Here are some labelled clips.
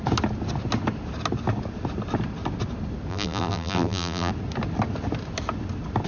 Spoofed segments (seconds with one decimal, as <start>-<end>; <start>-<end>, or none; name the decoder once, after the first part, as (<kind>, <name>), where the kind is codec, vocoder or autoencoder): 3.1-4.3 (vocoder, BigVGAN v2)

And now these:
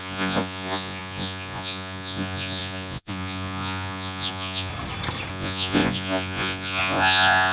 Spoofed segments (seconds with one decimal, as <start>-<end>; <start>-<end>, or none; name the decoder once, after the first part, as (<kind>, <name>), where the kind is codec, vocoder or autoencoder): 0.0-4.7 (vocoder, Vocos); 5.3-7.5

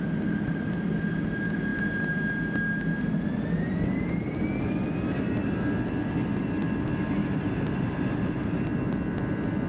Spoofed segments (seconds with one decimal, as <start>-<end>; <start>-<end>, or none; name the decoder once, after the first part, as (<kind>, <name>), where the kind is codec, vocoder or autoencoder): 7.2-8.6 (vocoder, BigVGAN v2)